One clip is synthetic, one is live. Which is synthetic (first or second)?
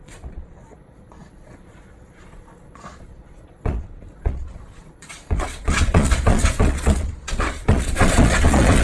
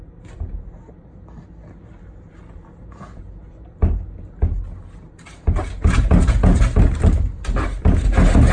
first